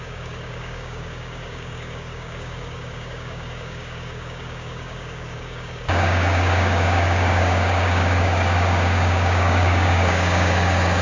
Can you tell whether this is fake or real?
fake